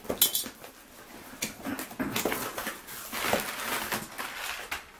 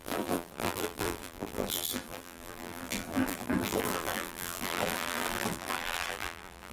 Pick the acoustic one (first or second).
first